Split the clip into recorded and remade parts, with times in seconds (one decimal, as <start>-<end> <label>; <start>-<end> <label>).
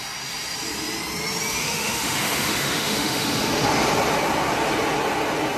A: 0.0-1.6 recorded; 1.6-3.7 remade; 3.7-5.6 recorded